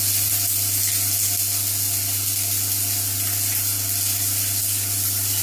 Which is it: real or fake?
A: real